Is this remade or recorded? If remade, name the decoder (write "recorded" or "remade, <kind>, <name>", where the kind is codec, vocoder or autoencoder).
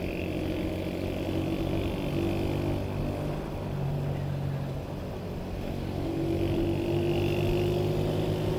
recorded